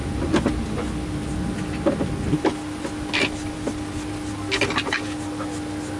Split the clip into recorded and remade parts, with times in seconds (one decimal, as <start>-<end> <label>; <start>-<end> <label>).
0.0-6.0 recorded